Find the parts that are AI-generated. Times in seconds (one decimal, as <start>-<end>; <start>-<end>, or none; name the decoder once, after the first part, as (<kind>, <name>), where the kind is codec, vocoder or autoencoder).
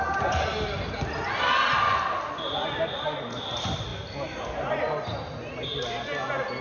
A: none